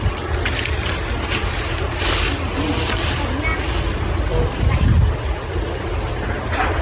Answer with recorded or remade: recorded